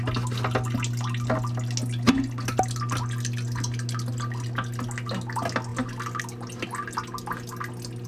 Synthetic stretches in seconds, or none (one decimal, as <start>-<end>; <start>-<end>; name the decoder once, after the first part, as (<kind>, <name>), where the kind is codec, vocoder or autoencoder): none